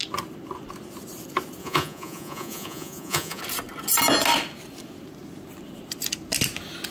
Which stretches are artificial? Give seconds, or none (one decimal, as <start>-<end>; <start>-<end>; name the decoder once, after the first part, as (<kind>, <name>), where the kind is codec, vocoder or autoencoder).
1.6-3.4 (vocoder, Vocos)